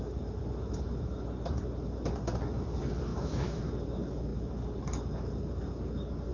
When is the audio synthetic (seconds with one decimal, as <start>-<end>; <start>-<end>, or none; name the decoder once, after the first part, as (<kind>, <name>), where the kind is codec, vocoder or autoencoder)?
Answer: 3.1-3.6 (autoencoder, DAC-VAE)